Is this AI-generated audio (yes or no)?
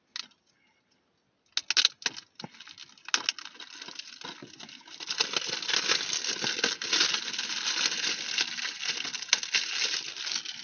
no